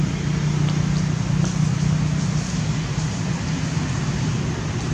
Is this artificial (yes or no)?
no